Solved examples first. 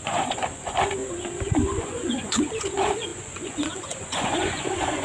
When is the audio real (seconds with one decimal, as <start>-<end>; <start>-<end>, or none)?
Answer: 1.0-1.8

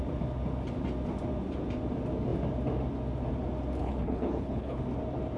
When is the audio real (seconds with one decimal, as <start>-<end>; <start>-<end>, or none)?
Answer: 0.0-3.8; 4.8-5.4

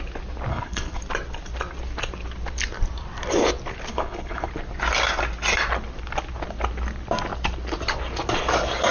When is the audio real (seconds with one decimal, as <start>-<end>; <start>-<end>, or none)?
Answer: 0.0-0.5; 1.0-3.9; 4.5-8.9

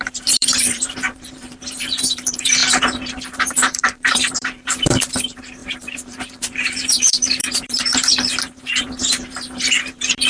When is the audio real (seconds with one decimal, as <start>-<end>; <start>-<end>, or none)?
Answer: none

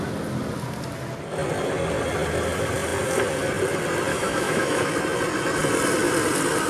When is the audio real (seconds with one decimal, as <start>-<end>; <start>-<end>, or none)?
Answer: 0.0-4.1; 4.9-6.7

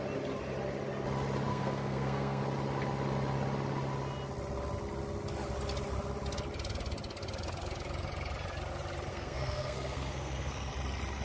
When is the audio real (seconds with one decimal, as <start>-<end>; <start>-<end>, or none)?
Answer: 0.0-1.5; 2.4-9.1; 10.7-11.2

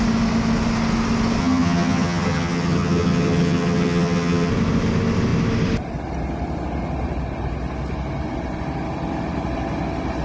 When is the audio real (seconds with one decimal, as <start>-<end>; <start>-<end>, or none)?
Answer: 0.0-1.4; 4.5-10.2